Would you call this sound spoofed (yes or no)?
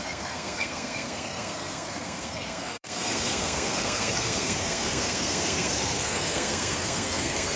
yes